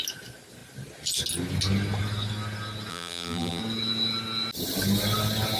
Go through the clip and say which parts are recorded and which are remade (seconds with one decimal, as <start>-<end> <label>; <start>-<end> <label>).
0.0-2.9 recorded; 2.9-3.6 remade; 3.6-5.6 recorded